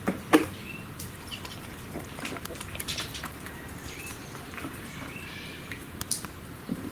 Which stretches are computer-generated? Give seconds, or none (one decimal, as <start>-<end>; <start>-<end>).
0.0-6.9